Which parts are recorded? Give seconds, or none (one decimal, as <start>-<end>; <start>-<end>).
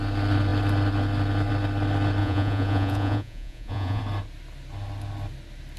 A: 0.0-2.2; 4.0-5.8